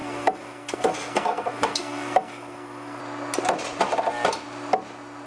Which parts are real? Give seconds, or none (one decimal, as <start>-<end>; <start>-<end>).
3.0-5.3